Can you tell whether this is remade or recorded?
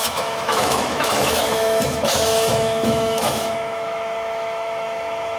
remade